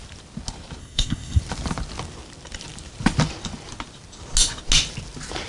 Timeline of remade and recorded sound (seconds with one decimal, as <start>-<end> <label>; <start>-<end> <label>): 0.0-0.8 recorded; 0.8-1.4 remade; 1.4-5.5 recorded